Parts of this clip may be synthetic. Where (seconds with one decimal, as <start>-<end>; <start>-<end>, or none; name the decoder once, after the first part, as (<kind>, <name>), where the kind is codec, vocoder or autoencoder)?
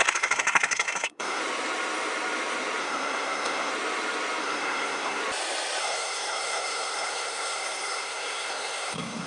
0.0-1.4 (codec, SNAC); 2.8-3.7; 4.4-5.2; 5.8-9.3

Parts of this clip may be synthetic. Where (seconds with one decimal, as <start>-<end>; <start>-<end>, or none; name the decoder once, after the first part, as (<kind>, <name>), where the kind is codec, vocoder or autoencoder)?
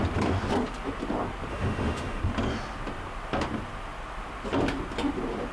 1.5-2.2 (autoencoder, DAC-VAE)